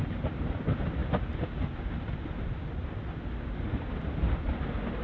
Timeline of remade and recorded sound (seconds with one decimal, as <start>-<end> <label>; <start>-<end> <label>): 0.0-5.0 recorded